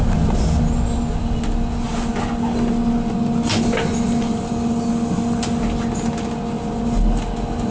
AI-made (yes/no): no